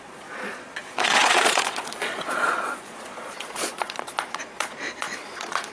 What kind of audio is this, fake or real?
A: fake